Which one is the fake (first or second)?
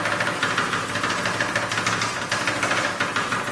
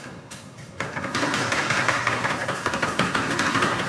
second